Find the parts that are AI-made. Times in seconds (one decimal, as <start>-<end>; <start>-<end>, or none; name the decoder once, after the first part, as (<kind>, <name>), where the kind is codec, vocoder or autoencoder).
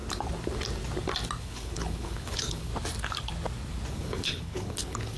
1.4-2.7 (codec, HILCodec); 3.9-5.2